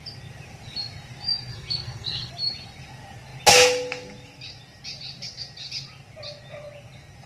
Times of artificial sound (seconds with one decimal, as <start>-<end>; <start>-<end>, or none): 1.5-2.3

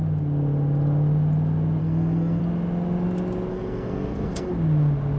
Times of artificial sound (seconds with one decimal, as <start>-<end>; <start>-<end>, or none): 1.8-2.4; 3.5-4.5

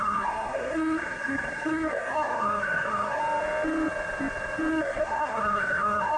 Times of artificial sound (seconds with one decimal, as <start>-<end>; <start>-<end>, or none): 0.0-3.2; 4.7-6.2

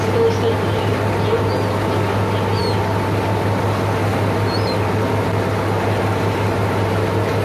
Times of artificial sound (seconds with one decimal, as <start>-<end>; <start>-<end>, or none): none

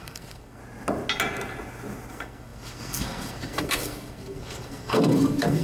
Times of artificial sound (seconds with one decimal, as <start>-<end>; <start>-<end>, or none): 0.0-0.6; 2.1-5.6